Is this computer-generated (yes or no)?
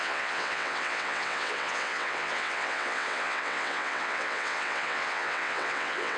yes